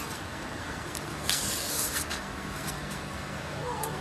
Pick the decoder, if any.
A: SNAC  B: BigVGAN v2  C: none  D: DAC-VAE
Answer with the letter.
A